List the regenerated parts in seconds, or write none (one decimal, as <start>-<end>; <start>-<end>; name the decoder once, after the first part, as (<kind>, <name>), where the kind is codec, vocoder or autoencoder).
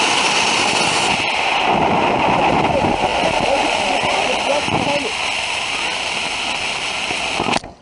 none